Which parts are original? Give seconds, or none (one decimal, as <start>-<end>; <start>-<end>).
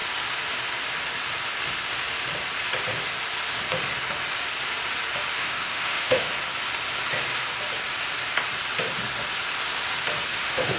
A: 0.0-5.4; 6.3-10.3